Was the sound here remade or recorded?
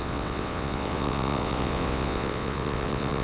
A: remade